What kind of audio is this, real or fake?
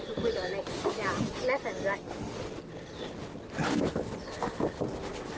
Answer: real